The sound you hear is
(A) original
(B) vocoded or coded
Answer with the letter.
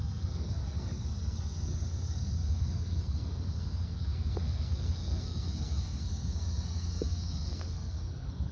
B